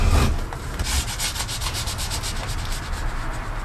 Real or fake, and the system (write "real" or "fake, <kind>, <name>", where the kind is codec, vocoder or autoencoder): real